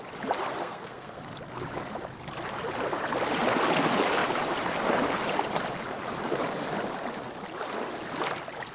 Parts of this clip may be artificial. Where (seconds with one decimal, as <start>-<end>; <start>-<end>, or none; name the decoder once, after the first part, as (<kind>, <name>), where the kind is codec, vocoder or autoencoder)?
0.6-1.2 (codec, SNAC)